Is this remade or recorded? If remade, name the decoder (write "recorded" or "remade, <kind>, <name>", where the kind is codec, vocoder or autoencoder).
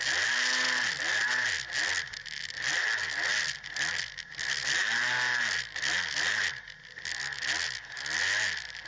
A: recorded